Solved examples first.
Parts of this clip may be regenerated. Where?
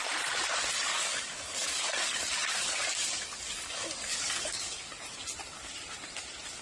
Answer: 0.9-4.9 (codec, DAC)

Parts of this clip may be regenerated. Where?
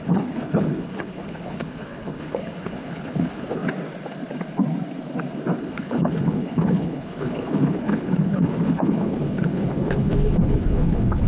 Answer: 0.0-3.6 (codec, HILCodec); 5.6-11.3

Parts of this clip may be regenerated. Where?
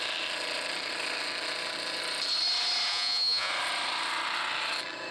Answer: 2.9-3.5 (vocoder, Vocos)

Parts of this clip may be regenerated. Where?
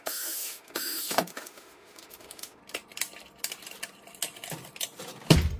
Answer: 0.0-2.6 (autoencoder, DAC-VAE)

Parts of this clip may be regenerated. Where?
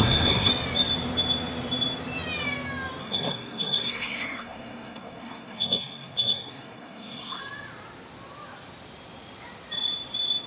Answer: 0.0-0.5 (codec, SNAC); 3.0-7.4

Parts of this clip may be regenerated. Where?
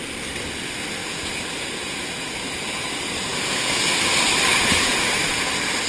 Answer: 1.0-2.9 (vocoder, Vocos); 3.3-3.8; 4.5-5.5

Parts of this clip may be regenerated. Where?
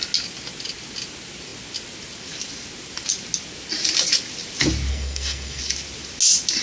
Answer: 4.9-5.6 (codec, SNAC)